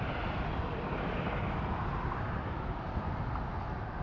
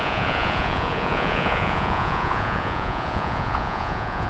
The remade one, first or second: second